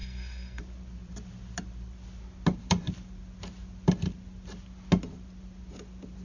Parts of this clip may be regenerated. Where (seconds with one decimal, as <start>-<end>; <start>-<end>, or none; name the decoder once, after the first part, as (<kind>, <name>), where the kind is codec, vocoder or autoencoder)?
0.0-0.6 (codec, SNAC)